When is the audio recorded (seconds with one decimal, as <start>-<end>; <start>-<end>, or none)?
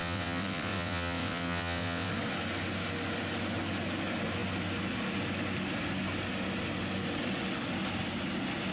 2.1-8.7